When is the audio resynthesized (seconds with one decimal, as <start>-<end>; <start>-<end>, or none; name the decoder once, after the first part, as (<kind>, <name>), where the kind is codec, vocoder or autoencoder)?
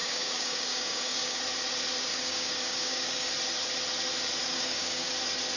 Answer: 0.0-1.4 (codec, DAC); 2.1-3.3; 4.5-5.1